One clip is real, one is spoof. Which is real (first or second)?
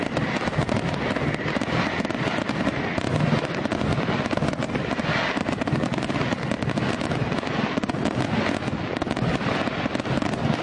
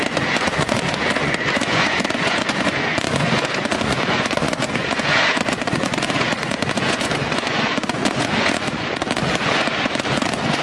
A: first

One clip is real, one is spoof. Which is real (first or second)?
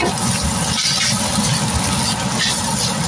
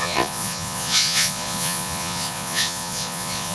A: first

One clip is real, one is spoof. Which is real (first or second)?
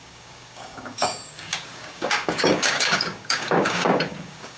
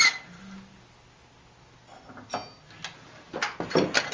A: second